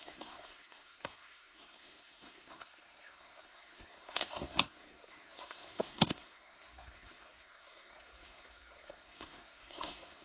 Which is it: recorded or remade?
remade